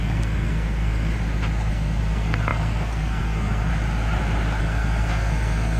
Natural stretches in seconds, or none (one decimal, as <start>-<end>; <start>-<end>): 1.1-1.7; 3.7-4.6